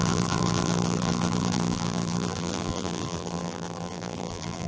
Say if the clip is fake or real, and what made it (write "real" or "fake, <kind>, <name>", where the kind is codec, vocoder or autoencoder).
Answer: fake, vocoder, BigVGAN v2